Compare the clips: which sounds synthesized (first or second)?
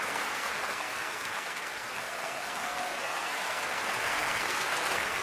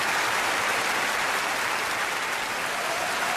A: first